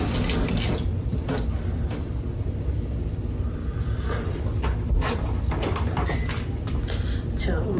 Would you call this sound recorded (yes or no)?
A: no